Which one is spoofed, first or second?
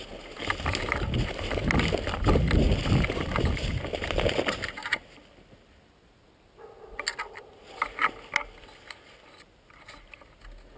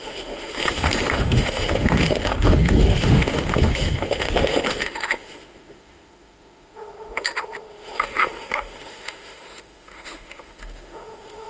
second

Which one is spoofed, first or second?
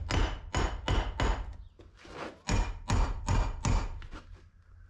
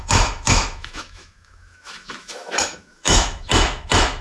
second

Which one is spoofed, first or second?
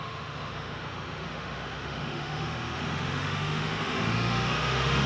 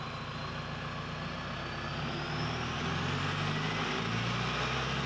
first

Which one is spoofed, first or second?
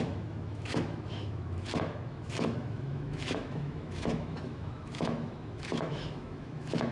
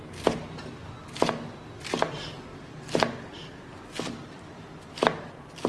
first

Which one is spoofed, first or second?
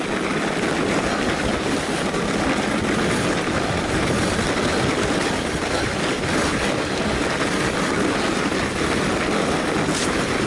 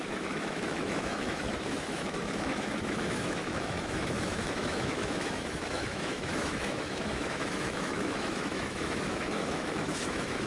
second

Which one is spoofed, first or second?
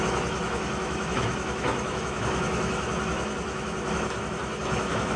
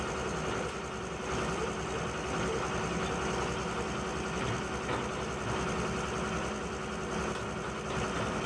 first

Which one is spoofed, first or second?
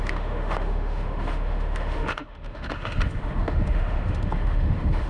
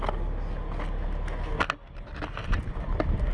first